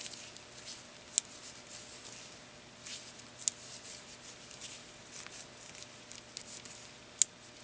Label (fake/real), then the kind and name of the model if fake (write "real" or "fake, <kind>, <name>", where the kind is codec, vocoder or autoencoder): real